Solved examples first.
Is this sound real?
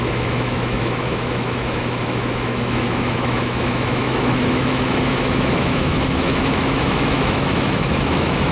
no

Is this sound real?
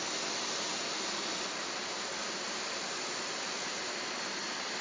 yes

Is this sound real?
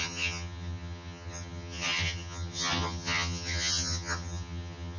no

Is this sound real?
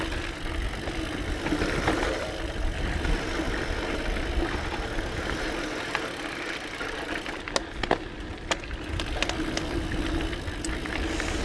yes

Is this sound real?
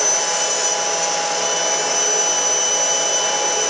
yes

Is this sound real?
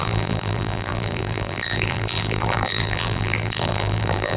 no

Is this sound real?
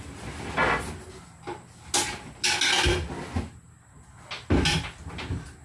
yes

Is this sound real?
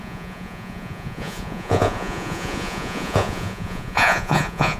no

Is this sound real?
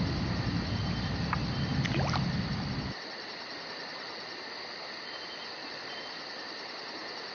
yes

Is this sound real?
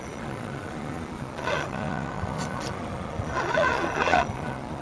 no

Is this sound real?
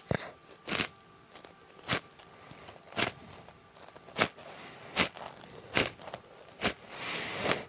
yes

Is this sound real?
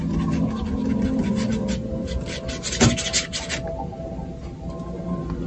yes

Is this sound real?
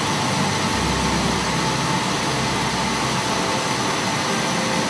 yes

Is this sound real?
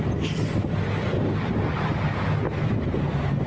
yes